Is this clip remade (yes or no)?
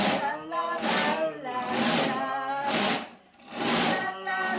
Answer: no